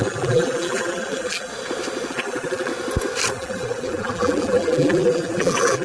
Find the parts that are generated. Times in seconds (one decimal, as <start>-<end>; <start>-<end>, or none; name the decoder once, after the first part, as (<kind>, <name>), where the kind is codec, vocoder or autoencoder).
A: 0.0-1.5 (vocoder, BigVGAN v2); 2.1-2.7; 3.3-5.8